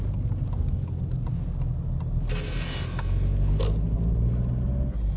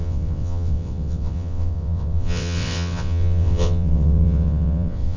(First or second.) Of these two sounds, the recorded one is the first